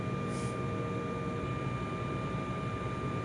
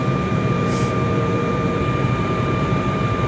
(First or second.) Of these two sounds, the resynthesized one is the second